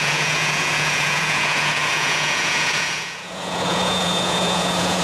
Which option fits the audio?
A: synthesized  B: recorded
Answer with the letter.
A